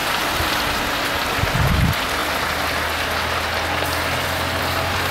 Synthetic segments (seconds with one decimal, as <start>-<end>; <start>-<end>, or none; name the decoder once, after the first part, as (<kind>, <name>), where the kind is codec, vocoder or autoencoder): none